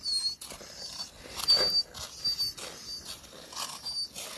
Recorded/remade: recorded